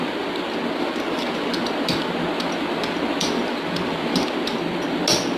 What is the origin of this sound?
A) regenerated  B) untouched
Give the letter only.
B